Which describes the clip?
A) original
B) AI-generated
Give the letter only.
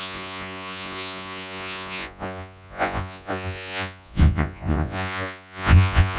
B